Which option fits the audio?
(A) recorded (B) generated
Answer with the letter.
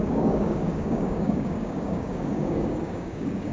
B